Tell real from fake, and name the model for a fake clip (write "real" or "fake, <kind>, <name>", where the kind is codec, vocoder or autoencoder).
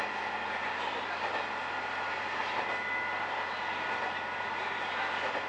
real